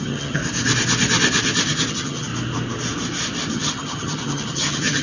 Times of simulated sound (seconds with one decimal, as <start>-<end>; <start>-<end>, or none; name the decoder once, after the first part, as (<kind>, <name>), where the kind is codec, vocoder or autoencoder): 0.0-0.4 (vocoder, HiFi-GAN); 1.9-2.3; 3.5-5.0